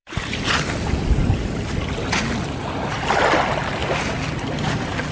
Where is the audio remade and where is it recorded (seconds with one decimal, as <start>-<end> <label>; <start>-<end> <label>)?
0.0-0.5 remade; 0.5-5.1 recorded

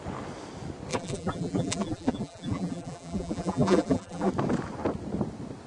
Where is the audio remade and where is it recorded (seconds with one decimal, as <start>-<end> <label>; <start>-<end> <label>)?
0.0-0.9 recorded; 0.9-4.3 remade; 4.3-5.7 recorded

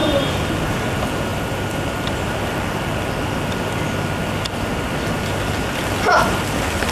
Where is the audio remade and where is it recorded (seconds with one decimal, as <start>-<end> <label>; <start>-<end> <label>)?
0.0-1.3 recorded; 1.3-3.3 remade; 3.3-4.2 recorded; 4.2-6.9 remade

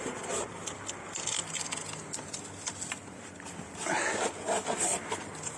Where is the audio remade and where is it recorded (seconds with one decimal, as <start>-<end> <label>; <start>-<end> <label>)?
0.0-5.6 recorded

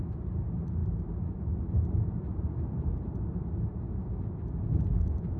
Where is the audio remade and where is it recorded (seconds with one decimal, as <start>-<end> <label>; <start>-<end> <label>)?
0.0-0.8 recorded; 0.8-1.5 remade; 1.5-2.3 recorded; 2.3-3.4 remade; 3.4-5.4 recorded

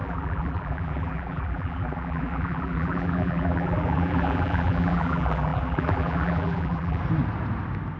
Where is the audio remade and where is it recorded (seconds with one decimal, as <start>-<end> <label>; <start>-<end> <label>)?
0.0-7.0 remade; 7.0-8.0 recorded